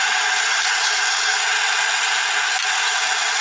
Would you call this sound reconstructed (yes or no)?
no